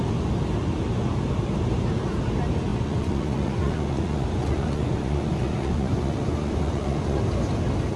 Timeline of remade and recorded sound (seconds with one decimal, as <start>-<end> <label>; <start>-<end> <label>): 0.0-2.7 recorded; 2.7-7.2 remade; 7.2-8.0 recorded